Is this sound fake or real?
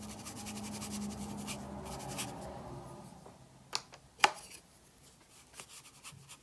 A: real